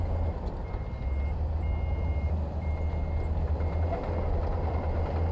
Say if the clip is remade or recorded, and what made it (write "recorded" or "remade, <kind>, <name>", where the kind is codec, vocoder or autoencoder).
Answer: recorded